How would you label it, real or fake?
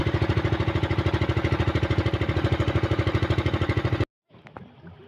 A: real